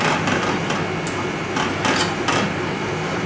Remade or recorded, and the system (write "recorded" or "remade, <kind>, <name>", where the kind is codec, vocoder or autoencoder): recorded